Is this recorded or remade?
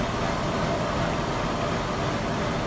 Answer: recorded